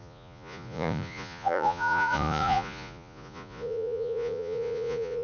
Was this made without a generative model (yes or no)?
no